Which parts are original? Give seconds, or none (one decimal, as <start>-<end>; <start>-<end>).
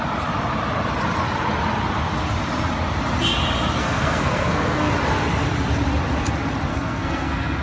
0.0-3.8; 4.9-6.7